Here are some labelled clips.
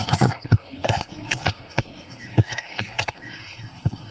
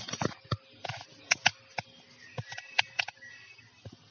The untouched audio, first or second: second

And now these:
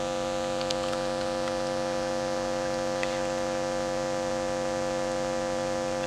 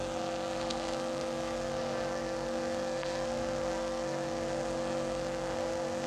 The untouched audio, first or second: first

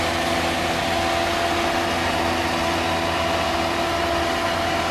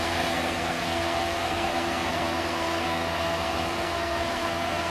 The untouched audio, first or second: first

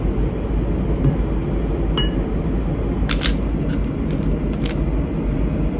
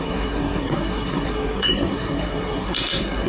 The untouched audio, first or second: first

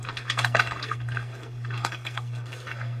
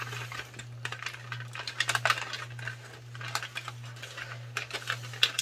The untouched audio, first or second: second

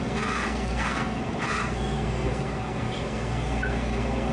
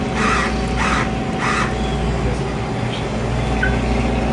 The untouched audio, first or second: second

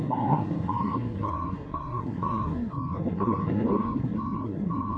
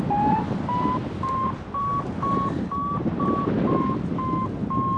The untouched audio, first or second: second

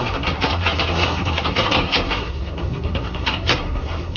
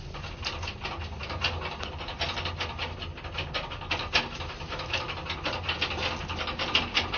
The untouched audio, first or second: second